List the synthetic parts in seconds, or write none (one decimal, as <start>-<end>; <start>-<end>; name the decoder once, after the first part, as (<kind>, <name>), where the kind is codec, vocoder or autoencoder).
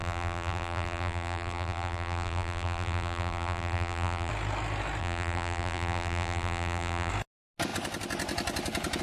0.0-4.3 (vocoder, BigVGAN v2); 5.0-7.1